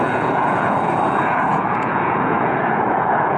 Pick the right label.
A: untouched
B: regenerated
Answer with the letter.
B